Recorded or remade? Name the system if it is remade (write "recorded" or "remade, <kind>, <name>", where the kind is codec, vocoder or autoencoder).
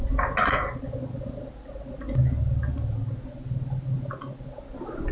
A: recorded